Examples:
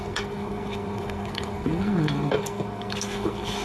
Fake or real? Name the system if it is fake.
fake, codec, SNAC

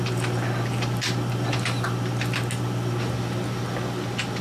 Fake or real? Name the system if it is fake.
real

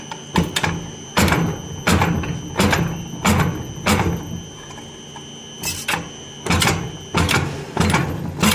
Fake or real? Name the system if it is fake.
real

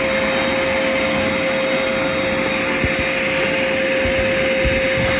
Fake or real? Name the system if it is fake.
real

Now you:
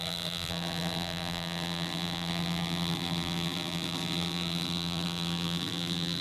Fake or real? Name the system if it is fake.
fake, vocoder, BigVGAN v2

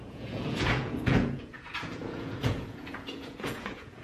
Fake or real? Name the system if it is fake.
fake, vocoder, Vocos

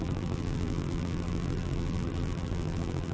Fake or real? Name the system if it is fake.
fake, vocoder, BigVGAN v2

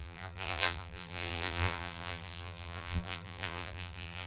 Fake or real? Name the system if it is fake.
fake, vocoder, BigVGAN v2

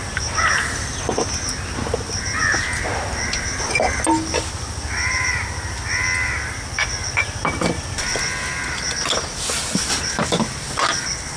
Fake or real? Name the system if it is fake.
real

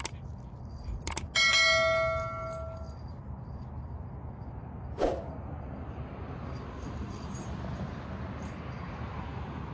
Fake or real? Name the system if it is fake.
real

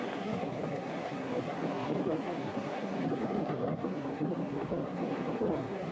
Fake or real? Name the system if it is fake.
fake, codec, SNAC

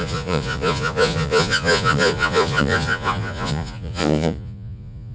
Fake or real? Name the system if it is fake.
fake, vocoder, Vocos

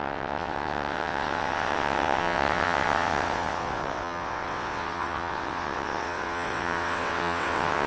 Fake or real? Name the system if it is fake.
fake, vocoder, WaveNeXt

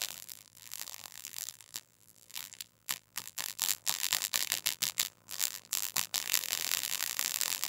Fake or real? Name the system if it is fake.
fake, vocoder, BigVGAN v2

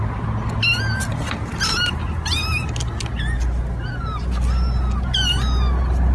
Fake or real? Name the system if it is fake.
real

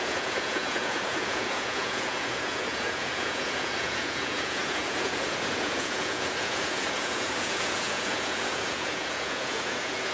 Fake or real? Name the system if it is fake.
fake, vocoder, Vocos